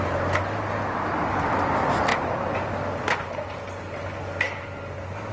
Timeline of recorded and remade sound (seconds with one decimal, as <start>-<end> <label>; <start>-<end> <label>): 0.0-5.3 recorded